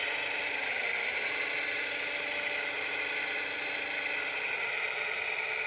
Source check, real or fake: real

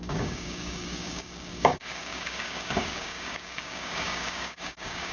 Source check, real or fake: fake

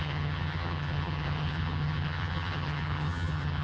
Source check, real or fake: fake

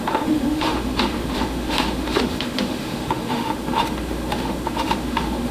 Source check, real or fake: fake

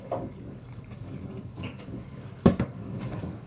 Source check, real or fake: fake